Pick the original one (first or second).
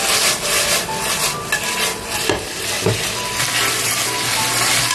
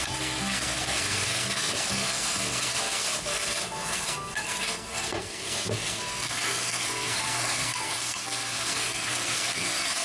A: first